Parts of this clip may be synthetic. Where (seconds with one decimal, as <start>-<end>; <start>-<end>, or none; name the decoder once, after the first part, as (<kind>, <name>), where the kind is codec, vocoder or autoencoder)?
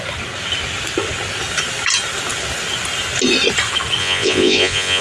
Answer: 4.0-5.0 (vocoder, Vocos)